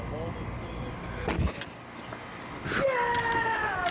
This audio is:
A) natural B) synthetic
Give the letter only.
A